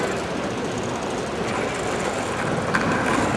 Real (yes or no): yes